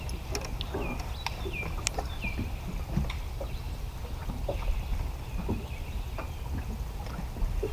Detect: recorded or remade recorded